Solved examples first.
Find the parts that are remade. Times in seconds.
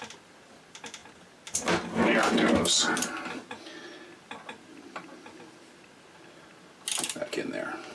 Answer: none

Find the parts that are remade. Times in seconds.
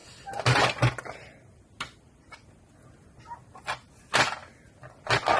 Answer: none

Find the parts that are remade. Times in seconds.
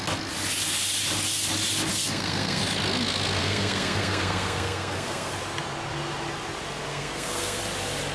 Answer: 1.9-2.6; 3.4-5.3; 6.9-7.6